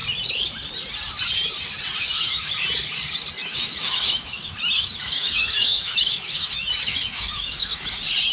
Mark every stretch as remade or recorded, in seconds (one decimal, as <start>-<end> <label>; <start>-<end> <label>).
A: 0.0-2.0 recorded; 2.0-2.5 remade; 2.5-3.4 recorded; 3.4-7.9 remade; 7.9-8.3 recorded